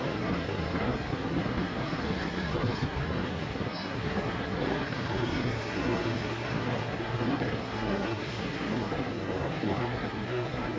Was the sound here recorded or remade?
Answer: remade